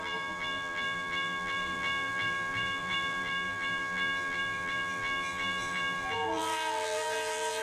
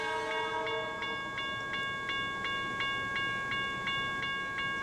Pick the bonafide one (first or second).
second